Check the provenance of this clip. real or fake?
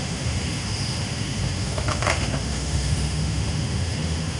fake